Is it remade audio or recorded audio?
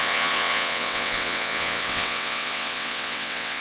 remade